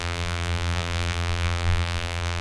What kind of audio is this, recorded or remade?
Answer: remade